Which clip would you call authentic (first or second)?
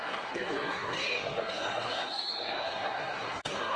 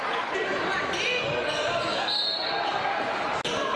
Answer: second